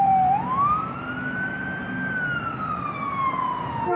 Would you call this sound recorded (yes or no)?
yes